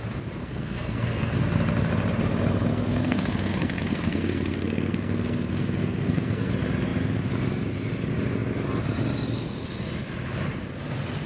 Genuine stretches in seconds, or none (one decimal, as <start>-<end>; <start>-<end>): 0.0-0.4; 1.4-2.7; 6.5-11.3